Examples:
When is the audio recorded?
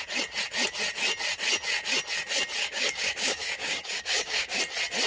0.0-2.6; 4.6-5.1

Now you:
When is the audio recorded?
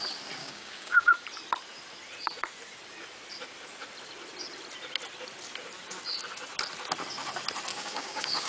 0.0-0.4; 1.1-7.7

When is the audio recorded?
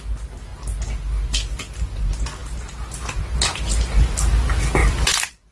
0.0-5.5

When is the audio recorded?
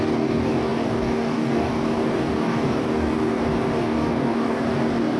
none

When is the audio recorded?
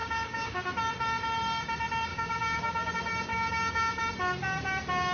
0.5-2.1; 2.9-3.3; 4.0-5.1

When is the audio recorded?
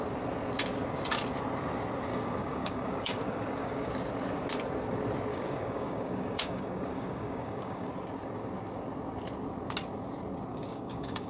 0.0-2.1; 3.9-5.3; 7.9-10.5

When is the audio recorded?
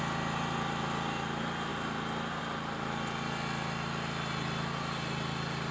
0.0-5.7